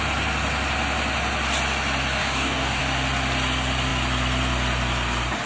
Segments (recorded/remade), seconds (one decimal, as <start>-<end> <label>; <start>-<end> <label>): 0.0-2.2 recorded; 2.2-2.8 remade; 2.8-5.5 recorded